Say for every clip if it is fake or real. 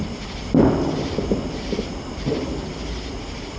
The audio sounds real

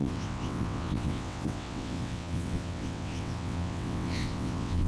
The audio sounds fake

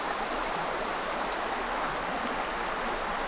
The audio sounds real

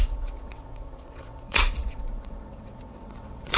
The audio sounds fake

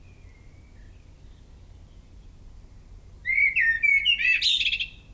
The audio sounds real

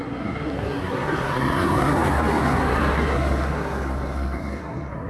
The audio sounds fake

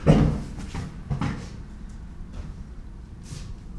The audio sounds real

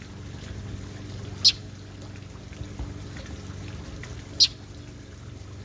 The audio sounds real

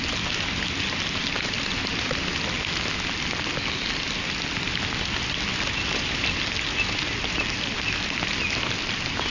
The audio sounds real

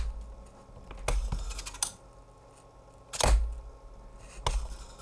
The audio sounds real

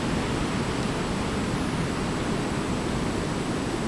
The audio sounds real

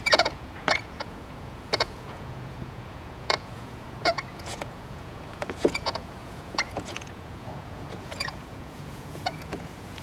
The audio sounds fake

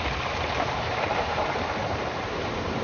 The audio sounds fake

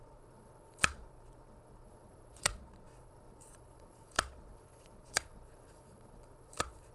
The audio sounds fake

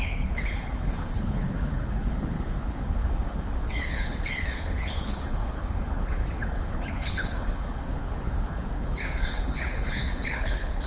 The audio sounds fake